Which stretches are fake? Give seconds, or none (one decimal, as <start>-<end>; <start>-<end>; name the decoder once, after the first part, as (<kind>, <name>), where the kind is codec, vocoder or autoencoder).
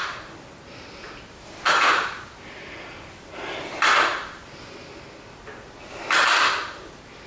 3.0-4.1 (vocoder, BigVGAN v2); 6.7-7.3